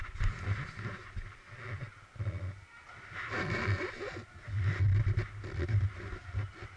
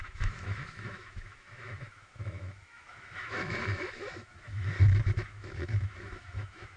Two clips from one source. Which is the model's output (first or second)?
second